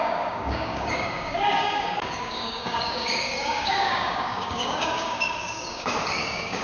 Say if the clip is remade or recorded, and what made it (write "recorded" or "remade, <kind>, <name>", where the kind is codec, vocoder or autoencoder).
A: remade, codec, DAC